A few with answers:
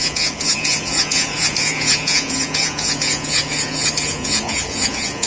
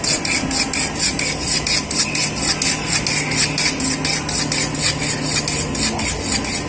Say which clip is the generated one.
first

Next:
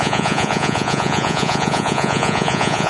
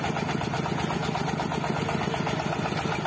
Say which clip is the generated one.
first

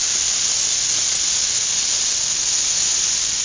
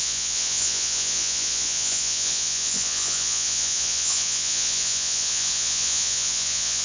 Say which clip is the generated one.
second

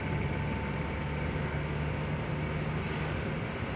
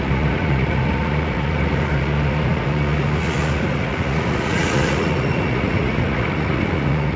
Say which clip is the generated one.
second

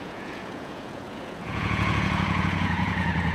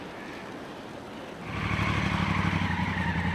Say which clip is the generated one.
first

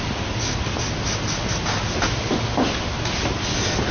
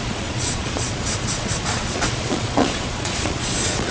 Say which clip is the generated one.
second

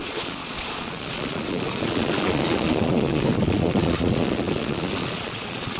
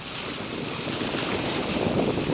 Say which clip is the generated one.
first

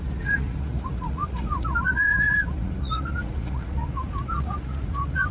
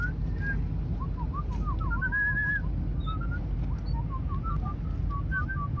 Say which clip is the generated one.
first